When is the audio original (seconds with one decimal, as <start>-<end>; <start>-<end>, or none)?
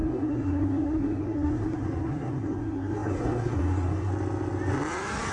4.1-5.3